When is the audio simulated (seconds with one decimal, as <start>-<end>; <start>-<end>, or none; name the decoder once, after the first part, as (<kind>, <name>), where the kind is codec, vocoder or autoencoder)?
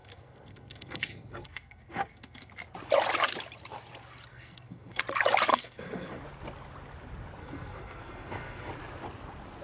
0.0-2.5 (codec, SNAC); 4.3-5.0; 5.5-6.2; 7.4-8.7